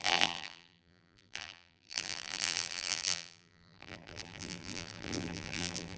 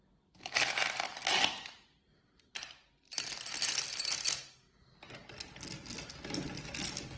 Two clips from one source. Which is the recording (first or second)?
second